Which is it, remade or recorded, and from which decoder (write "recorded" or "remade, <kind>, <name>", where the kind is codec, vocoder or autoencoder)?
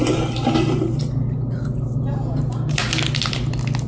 recorded